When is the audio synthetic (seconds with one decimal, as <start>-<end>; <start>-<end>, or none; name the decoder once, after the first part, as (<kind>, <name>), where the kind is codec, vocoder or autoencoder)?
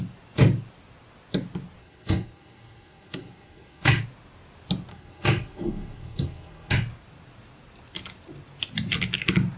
1.8-4.0 (codec, SNAC); 4.9-6.7